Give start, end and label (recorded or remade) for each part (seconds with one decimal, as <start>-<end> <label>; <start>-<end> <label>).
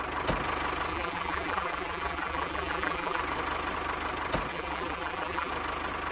0.0-0.9 recorded; 0.9-3.2 remade; 3.2-4.5 recorded; 4.5-5.5 remade; 5.5-6.1 recorded